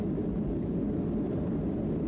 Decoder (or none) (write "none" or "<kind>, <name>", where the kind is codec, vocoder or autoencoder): none